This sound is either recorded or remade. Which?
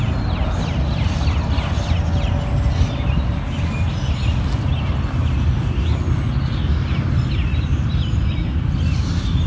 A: recorded